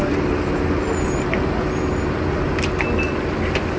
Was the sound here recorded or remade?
recorded